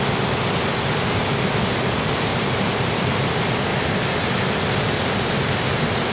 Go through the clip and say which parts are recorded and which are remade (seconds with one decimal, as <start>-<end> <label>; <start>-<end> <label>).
0.0-6.1 recorded